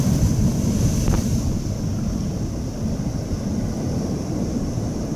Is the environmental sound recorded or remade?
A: recorded